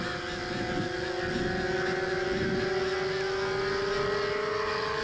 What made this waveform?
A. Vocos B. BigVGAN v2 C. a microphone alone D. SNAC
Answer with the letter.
C